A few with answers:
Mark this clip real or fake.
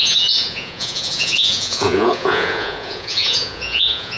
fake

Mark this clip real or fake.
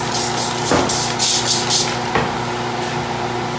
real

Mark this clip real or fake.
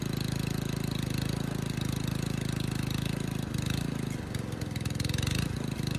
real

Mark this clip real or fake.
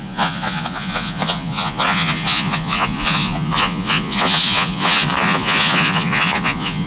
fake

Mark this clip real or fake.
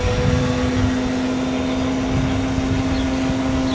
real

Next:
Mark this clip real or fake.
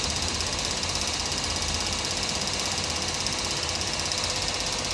real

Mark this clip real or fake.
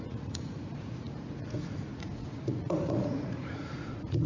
fake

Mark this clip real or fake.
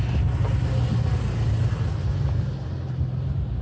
real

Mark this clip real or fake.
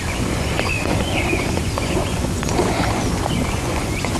fake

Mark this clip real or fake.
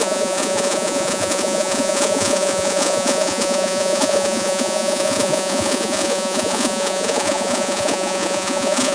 fake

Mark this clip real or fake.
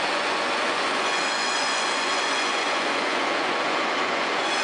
fake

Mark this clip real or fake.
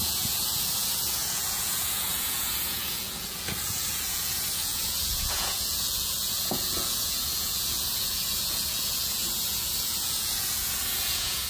fake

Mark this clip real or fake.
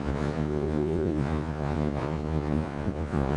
fake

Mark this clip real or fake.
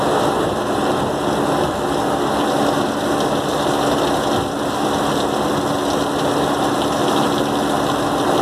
real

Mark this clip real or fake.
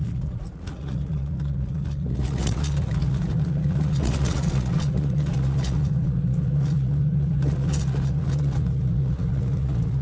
fake